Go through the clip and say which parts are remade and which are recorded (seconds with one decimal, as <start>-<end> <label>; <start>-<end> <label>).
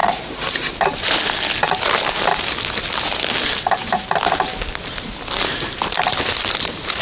0.0-0.7 remade; 0.7-7.0 recorded